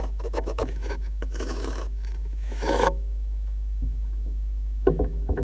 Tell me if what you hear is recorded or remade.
remade